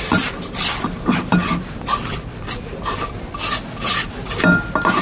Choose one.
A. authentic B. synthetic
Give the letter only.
A